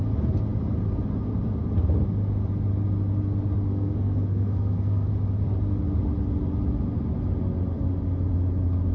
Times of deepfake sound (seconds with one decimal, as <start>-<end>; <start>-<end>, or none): 3.7-5.1